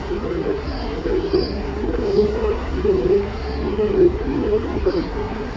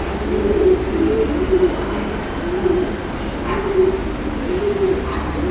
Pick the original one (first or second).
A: second